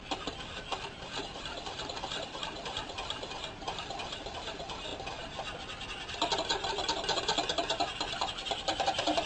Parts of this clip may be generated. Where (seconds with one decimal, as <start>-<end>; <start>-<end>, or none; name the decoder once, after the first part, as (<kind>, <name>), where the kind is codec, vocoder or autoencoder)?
0.0-4.9 (vocoder, BigVGAN v2); 6.7-9.3